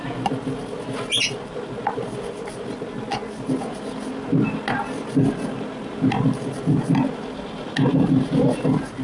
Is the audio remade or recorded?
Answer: recorded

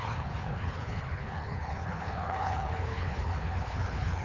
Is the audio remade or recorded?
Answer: remade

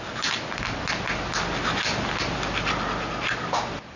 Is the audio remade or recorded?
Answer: recorded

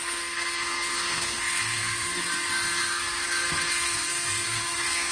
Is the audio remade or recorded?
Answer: remade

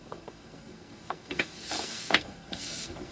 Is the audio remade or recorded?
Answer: remade